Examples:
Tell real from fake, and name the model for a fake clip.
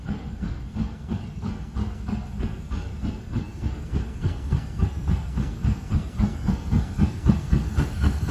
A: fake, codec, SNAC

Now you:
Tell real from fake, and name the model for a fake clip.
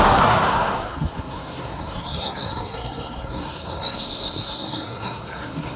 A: fake, codec, SNAC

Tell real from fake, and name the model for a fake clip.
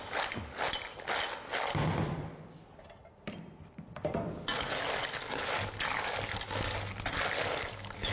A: real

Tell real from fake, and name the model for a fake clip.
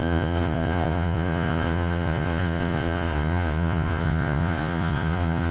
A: fake, vocoder, Vocos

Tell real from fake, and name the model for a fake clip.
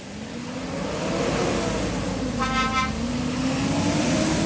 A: real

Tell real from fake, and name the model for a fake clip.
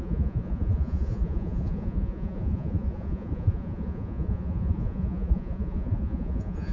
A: fake, vocoder, Vocos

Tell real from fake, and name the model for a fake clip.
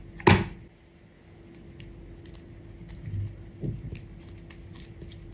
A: real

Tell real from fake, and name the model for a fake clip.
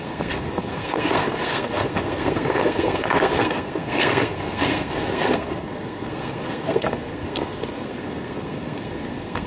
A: fake, codec, SNAC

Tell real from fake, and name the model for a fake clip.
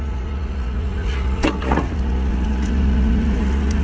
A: fake, vocoder, Vocos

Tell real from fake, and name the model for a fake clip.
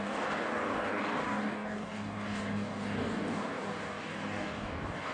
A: fake, codec, DAC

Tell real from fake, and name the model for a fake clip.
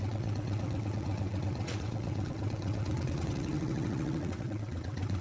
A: fake, vocoder, WaveNeXt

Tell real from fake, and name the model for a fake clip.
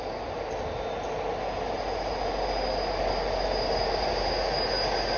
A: real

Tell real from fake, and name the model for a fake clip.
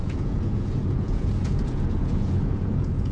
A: fake, vocoder, Vocos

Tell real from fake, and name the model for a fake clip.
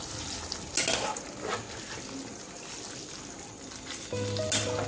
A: real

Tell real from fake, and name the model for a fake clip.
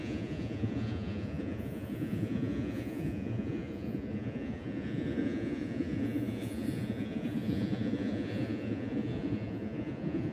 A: fake, vocoder, Vocos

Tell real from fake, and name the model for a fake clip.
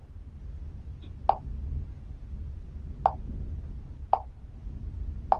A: real